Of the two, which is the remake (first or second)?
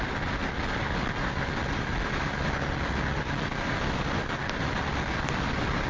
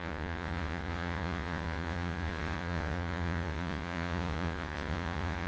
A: second